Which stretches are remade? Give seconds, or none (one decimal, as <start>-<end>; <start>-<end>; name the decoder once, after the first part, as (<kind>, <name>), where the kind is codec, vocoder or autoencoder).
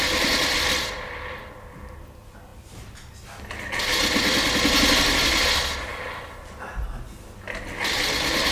none